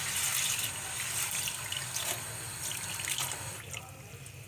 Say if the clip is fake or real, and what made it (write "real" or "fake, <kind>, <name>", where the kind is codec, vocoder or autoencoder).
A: real